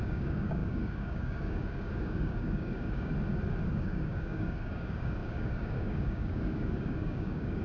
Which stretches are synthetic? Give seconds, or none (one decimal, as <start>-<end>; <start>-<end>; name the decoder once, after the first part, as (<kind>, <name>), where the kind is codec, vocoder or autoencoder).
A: 0.0-3.1 (codec, DAC); 3.7-7.6